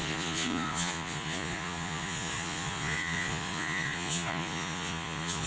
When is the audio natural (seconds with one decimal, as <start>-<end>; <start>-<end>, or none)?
none